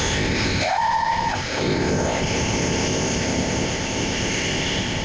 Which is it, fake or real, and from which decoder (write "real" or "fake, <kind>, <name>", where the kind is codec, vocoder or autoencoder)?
fake, codec, ZipCodec